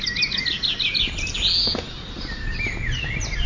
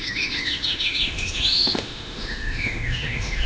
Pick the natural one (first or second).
first